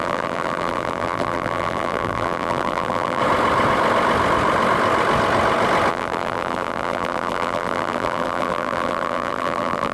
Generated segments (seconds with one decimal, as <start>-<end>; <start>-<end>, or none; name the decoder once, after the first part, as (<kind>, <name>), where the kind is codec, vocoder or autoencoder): 0.0-3.2 (vocoder, BigVGAN v2); 5.9-9.9